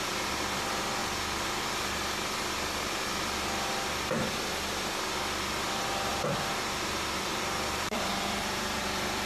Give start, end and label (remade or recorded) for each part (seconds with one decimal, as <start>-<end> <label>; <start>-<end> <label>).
0.0-1.0 remade; 1.0-5.6 recorded; 5.6-9.3 remade